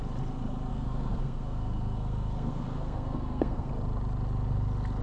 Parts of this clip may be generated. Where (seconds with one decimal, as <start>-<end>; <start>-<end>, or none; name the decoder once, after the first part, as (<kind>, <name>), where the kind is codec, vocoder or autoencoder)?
0.7-3.7 (codec, SNAC)